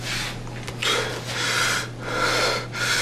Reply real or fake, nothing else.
real